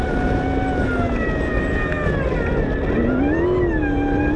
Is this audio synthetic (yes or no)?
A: no